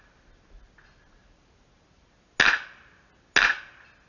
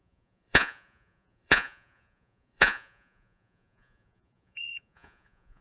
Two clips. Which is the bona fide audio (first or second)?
first